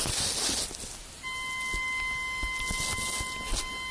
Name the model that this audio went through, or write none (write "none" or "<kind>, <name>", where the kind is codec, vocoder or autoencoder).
none